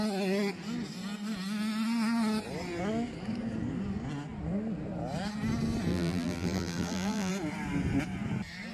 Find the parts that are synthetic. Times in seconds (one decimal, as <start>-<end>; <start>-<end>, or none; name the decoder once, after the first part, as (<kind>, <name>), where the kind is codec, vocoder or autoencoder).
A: 5.9-7.3 (vocoder, BigVGAN v2)